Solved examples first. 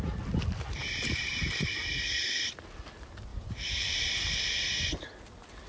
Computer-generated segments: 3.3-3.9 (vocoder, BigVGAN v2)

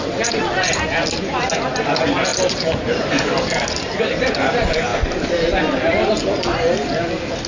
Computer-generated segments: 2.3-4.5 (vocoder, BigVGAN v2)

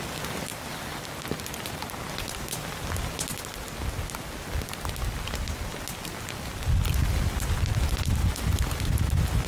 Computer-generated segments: 0.5-2.1 (vocoder, BigVGAN v2)

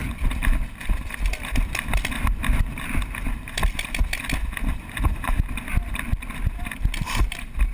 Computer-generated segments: none

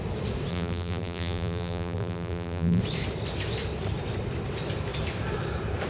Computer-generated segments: 0.5-2.8 (vocoder, BigVGAN v2)

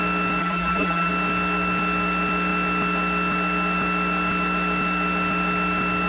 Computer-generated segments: 0.4-1.1 (vocoder, BigVGAN v2)

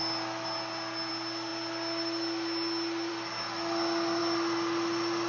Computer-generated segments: none